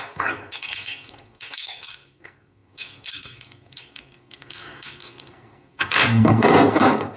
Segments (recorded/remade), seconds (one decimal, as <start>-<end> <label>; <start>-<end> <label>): 0.0-7.2 remade